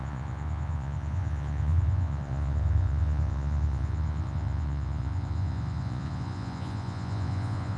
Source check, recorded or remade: remade